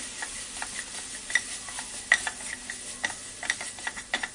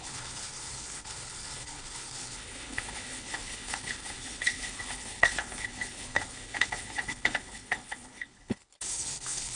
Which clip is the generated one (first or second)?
second